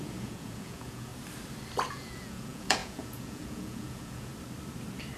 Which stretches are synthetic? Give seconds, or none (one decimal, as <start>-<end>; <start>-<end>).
0.0-1.1; 1.9-4.3